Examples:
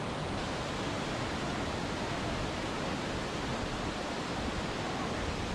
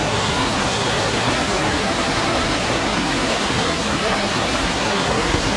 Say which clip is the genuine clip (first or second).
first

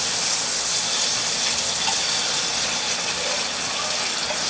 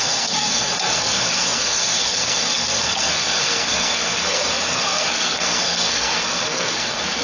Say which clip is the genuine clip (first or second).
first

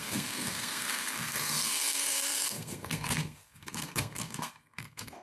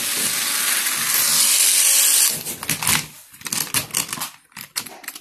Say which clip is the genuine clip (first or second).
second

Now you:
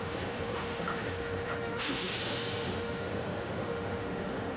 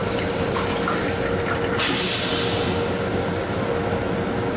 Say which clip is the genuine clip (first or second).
second